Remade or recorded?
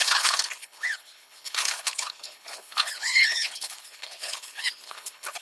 remade